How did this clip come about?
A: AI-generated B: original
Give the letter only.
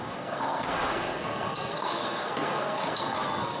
A